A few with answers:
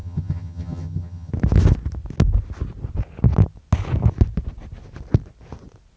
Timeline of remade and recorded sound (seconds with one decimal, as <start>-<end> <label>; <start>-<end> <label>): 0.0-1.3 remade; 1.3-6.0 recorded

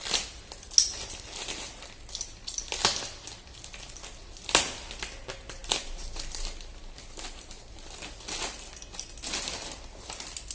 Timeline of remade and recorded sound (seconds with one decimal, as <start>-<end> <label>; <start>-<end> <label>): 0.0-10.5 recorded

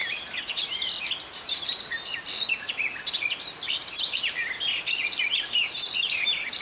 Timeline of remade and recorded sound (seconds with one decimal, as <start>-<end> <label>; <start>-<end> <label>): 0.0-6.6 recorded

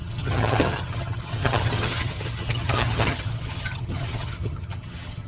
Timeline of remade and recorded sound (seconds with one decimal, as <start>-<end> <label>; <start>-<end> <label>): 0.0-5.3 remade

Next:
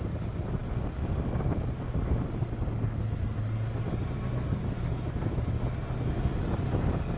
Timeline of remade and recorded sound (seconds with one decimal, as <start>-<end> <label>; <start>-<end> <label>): 0.0-7.2 recorded